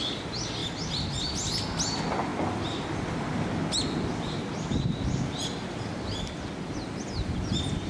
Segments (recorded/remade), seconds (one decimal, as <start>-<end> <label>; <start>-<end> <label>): 0.0-7.9 recorded